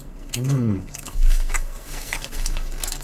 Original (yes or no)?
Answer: no